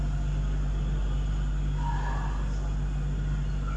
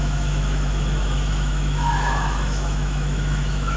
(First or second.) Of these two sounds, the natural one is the first